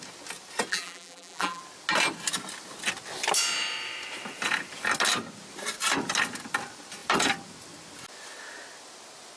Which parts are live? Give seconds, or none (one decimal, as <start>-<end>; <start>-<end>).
0.0-0.7; 1.6-9.4